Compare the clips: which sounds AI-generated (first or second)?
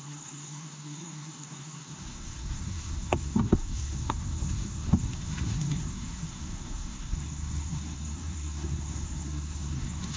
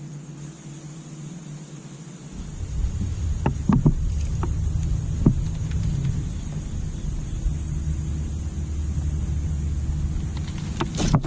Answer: first